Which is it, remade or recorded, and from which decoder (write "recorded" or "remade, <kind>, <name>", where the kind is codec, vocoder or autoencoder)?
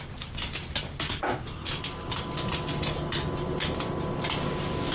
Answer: recorded